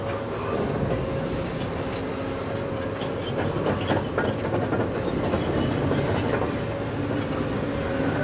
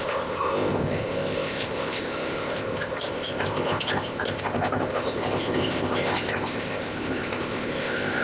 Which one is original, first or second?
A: first